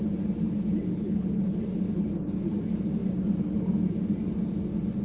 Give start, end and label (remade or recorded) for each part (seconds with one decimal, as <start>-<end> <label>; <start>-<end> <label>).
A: 0.0-0.9 recorded; 0.9-1.6 remade; 1.6-5.0 recorded